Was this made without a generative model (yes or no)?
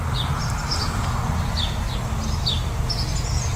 yes